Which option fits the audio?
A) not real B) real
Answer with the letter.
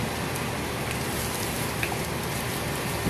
A